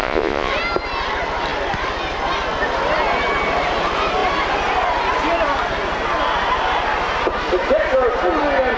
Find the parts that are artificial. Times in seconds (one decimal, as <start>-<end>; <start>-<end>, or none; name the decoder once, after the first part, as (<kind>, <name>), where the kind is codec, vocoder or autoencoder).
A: 0.0-0.5 (vocoder, Vocos)